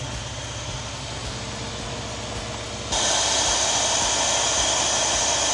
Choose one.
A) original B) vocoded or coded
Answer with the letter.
A